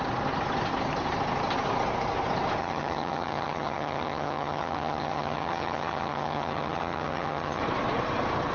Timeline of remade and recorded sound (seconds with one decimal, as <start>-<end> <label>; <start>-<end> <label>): 0.0-2.6 recorded; 2.6-7.6 remade; 7.6-8.5 recorded

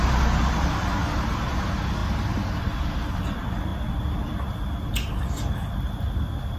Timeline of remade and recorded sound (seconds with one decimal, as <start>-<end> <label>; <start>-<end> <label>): 0.0-6.6 recorded

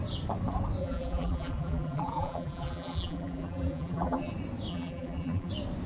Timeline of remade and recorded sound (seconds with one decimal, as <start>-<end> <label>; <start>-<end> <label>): 0.0-0.8 recorded; 0.8-4.3 remade; 4.3-4.7 recorded; 4.7-5.5 remade; 5.5-5.9 recorded

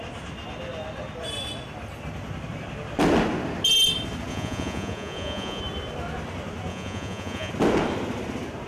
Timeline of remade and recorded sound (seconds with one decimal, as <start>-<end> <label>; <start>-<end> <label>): 0.0-4.3 recorded; 4.3-5.6 remade; 5.6-6.7 recorded; 6.7-7.5 remade; 7.5-8.7 recorded

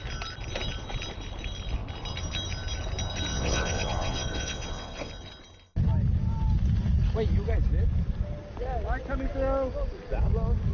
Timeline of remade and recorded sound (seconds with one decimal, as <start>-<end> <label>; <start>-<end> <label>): 0.0-3.3 recorded; 3.3-5.1 remade; 5.1-10.7 recorded

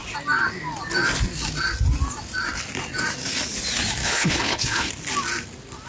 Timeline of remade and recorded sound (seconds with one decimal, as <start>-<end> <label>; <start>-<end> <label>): 0.0-4.0 recorded; 4.0-4.9 remade; 4.9-5.9 recorded

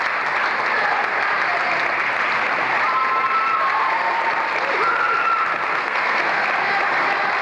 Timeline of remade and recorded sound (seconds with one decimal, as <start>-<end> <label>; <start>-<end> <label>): 0.0-5.7 recorded; 5.7-6.4 remade; 6.4-7.4 recorded